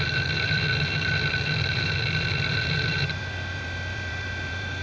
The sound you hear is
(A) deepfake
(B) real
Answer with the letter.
A